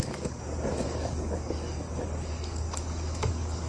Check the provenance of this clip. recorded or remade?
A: remade